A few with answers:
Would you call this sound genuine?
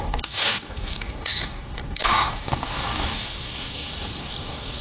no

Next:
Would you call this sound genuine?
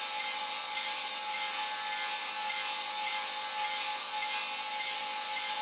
yes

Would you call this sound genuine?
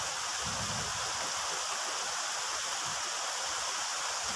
yes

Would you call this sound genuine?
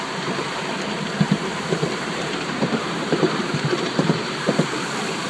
no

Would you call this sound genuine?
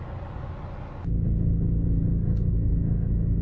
yes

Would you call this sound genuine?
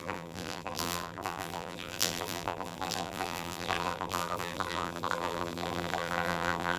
no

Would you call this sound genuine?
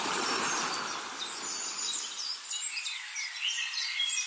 no